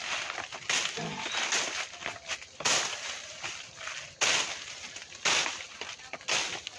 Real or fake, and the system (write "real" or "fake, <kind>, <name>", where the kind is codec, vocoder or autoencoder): real